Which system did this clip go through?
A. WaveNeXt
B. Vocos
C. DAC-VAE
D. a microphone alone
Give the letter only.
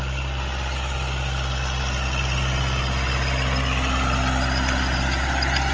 D